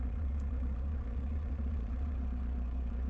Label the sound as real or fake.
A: fake